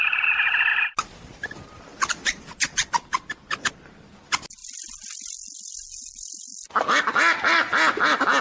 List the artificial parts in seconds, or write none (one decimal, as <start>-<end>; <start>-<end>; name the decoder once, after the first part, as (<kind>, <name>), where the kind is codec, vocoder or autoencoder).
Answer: none